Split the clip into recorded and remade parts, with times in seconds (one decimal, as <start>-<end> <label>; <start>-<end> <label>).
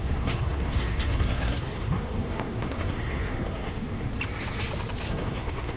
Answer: 0.0-4.1 remade; 4.1-5.1 recorded; 5.1-5.8 remade